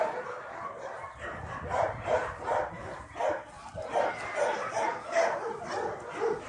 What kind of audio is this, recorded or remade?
remade